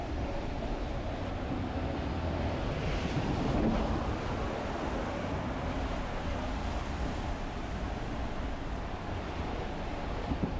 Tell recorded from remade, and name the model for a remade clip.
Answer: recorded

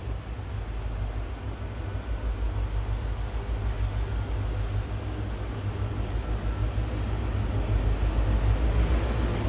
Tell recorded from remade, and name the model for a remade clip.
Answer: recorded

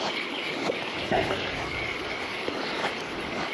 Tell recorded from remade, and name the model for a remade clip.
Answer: remade, codec, DAC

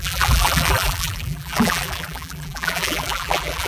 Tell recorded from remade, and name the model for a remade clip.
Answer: remade, vocoder, BigVGAN v2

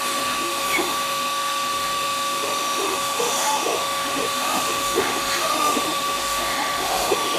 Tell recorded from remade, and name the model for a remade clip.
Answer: remade, autoencoder, DAC-VAE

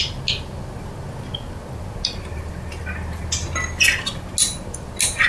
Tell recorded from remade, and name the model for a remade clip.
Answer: recorded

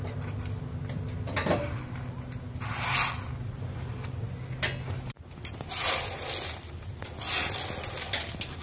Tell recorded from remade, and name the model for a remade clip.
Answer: recorded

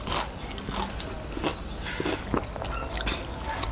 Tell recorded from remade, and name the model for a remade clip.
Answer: recorded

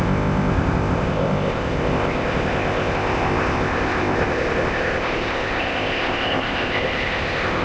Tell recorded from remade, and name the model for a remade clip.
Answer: remade, codec, ZipCodec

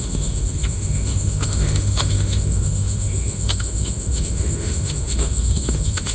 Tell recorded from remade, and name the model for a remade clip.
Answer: remade, autoencoder, DAC-VAE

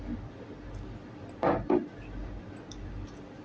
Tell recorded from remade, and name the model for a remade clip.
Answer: recorded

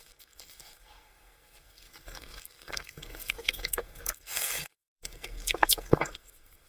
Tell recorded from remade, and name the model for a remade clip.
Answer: remade, codec, SNAC